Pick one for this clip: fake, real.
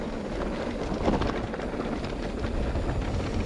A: real